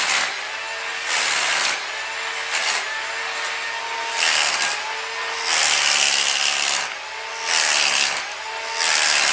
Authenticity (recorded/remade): recorded